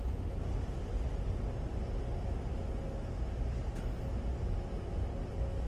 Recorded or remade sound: recorded